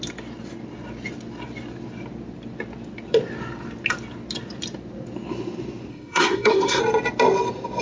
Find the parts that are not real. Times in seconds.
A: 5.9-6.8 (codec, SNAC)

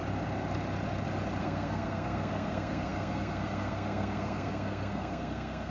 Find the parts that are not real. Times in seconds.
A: 1.4-5.7 (codec, SNAC)